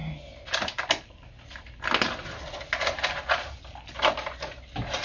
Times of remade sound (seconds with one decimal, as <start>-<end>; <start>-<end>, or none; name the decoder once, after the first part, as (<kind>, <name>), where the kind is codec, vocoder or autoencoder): none